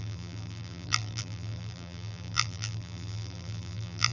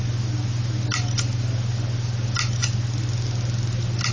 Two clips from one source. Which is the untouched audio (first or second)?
second